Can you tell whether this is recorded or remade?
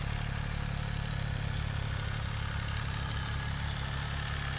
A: recorded